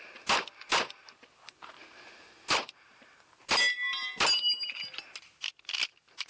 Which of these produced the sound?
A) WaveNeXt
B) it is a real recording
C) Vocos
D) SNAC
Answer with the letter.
B